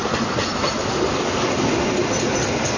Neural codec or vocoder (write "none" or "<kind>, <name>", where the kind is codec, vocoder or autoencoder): none